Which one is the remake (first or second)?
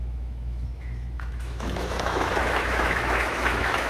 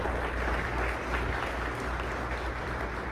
first